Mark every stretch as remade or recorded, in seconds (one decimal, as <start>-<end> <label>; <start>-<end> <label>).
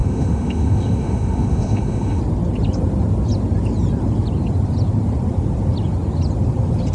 0.0-2.2 remade; 2.2-6.9 recorded